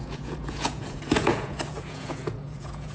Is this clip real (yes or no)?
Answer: no